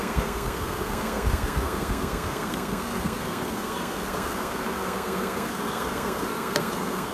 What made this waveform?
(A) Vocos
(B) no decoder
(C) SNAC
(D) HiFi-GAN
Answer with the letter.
C